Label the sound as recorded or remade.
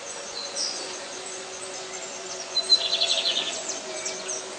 remade